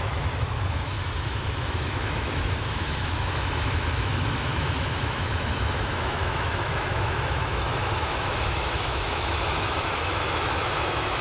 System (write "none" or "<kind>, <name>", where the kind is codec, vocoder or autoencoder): autoencoder, DAC-VAE